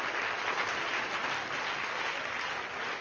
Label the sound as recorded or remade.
recorded